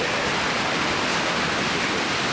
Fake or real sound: real